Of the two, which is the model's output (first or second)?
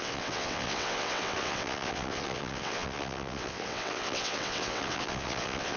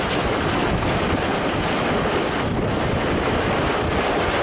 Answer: first